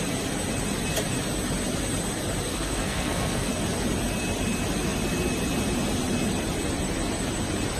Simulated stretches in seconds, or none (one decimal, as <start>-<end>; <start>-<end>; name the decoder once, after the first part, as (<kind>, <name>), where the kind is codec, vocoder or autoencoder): 2.5-3.5 (codec, SNAC)

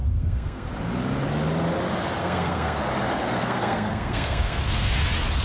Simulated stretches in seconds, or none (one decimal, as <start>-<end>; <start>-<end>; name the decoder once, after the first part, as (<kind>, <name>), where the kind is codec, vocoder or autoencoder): 0.0-0.7 (codec, SNAC); 2.2-2.8; 3.4-4.9

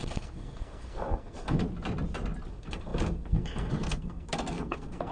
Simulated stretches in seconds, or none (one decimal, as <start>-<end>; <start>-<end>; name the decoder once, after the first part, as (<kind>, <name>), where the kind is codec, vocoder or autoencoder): 0.0-1.6 (codec, SNAC); 2.5-5.1

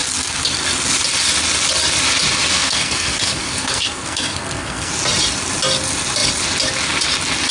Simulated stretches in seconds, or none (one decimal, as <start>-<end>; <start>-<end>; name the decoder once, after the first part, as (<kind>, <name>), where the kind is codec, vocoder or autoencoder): 2.5-4.9 (codec, SNAC)

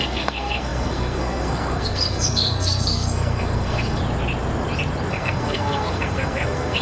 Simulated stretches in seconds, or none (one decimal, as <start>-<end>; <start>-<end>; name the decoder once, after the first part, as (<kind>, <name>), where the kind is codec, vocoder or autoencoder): 0.0-4.0 (codec, SNAC); 5.1-6.8

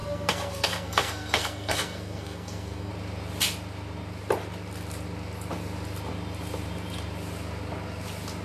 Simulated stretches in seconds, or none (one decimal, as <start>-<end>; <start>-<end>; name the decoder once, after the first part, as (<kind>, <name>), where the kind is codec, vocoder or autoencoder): 0.0-2.9 (codec, SNAC)

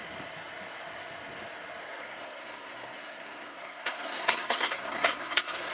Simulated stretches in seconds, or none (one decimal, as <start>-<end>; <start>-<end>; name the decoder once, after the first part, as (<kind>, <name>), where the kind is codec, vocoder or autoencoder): 2.0-5.7 (codec, SNAC)